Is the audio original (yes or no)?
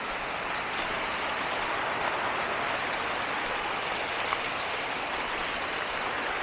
yes